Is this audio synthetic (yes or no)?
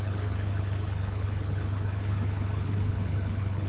yes